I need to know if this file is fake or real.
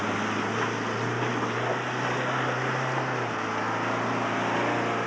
real